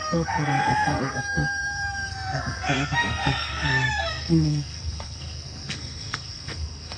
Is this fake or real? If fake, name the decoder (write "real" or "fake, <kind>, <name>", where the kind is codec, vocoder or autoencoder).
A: fake, codec, SNAC